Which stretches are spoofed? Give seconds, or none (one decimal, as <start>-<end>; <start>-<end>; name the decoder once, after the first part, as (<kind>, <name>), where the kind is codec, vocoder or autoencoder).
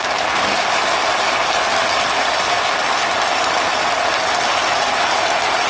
none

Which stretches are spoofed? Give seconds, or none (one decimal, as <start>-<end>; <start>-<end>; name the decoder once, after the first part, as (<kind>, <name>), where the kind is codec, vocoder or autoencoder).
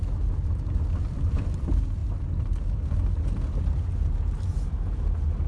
none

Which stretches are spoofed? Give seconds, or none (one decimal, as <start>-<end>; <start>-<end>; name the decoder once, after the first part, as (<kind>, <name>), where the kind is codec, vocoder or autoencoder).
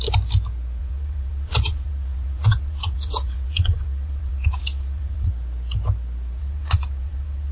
0.8-5.3 (vocoder, WaveNeXt); 6.4-7.5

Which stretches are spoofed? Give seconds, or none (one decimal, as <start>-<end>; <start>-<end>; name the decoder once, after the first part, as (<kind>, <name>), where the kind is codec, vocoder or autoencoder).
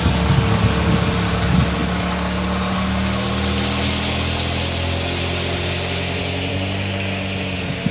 none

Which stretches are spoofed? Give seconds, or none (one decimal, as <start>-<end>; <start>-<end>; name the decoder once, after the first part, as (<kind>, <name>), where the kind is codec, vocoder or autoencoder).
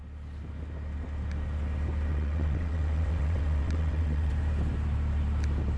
2.1-4.3 (vocoder, WaveNeXt)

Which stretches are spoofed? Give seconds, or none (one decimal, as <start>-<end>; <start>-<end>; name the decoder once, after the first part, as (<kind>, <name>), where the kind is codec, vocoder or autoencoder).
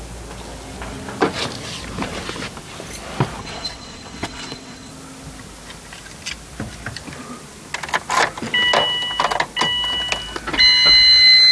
3.4-4.9 (vocoder, WaveNeXt)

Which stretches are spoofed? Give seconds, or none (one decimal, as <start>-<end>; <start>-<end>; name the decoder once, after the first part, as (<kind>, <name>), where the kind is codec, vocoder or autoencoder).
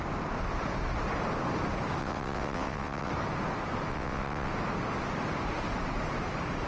2.0-3.1 (vocoder, WaveNeXt); 3.9-4.5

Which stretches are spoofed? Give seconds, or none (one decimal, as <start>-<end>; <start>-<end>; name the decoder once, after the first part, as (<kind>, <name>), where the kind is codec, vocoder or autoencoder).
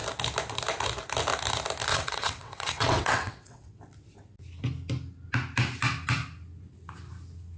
1.9-3.8 (vocoder, WaveNeXt)